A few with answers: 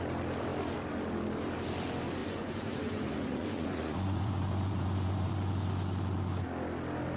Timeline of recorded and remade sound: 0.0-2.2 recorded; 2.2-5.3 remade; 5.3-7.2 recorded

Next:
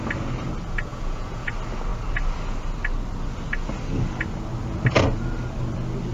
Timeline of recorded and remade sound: 0.0-0.9 recorded; 0.9-1.5 remade; 1.5-6.1 recorded

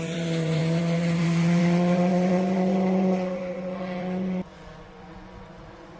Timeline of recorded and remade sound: 0.0-6.0 remade

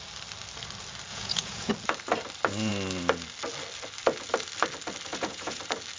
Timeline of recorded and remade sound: 0.0-1.1 recorded; 1.1-1.7 remade; 1.7-5.1 recorded; 5.1-5.6 remade; 5.6-6.0 recorded

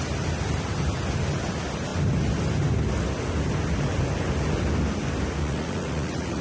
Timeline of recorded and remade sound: 0.0-5.4 recorded; 5.4-6.4 remade

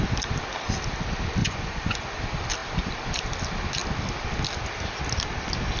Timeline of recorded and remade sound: 0.0-1.4 recorded; 1.4-2.2 remade; 2.2-5.8 recorded